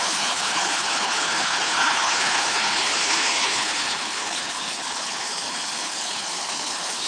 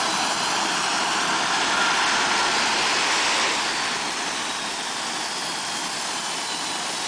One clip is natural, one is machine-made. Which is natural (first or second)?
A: second